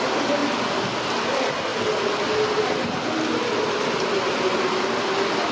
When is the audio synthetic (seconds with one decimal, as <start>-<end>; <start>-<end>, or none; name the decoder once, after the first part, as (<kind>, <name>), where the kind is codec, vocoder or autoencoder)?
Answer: none